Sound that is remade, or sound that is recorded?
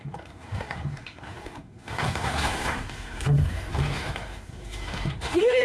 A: remade